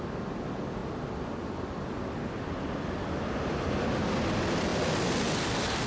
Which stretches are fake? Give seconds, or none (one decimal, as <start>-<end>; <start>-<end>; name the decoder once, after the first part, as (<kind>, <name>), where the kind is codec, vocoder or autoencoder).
none